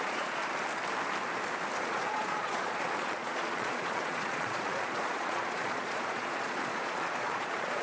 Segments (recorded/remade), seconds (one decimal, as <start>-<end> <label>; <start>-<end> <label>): 0.0-0.4 remade; 0.4-1.8 recorded; 1.8-7.8 remade